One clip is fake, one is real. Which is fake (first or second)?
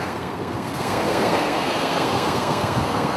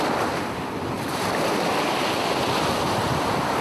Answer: first